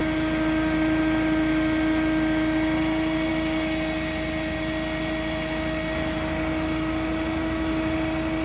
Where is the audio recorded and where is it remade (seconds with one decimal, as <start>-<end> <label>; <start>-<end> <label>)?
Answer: 0.0-8.4 recorded